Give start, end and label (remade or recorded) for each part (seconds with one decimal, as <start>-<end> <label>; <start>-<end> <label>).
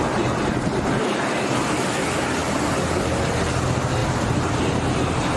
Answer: 0.0-2.4 recorded; 2.4-3.5 remade; 3.5-4.0 recorded; 4.0-4.5 remade; 4.5-5.4 recorded